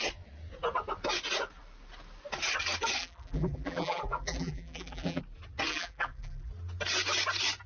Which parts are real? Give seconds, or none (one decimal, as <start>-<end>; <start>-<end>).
0.0-3.0; 5.2-5.7; 6.5-7.7